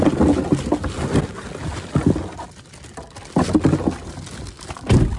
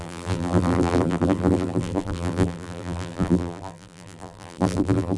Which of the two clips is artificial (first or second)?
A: second